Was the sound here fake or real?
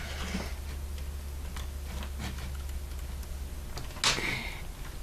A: real